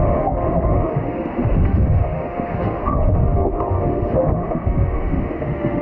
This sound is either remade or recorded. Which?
remade